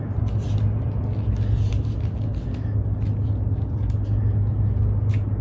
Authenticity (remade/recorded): recorded